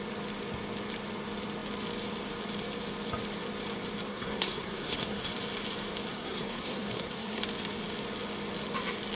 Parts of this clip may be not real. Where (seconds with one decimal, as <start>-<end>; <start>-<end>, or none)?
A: 4.1-5.3; 6.1-7.4